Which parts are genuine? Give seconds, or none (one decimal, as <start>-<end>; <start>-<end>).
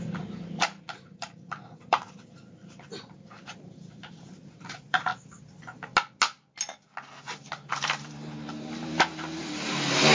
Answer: 5.1-7.7